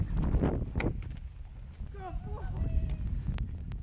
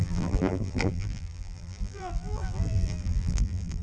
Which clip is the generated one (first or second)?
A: second